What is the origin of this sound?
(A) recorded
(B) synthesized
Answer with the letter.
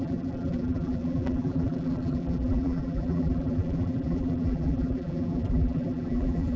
B